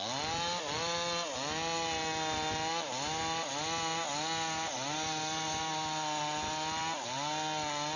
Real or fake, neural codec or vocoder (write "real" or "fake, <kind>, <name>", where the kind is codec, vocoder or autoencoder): real